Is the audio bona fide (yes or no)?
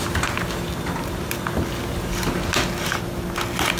yes